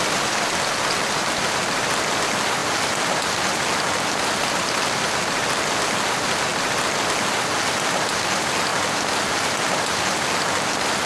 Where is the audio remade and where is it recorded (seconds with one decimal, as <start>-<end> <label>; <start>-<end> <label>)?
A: 0.0-11.1 recorded